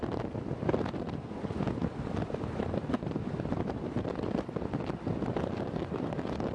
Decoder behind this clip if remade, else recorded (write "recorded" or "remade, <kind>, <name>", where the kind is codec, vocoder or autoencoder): recorded